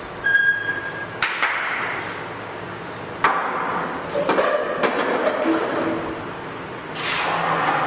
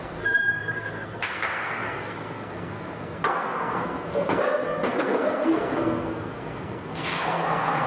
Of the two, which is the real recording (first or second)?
first